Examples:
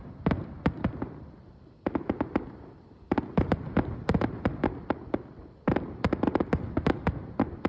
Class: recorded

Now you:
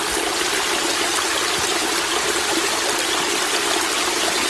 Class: recorded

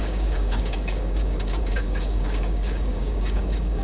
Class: remade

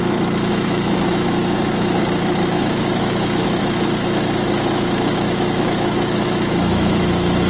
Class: remade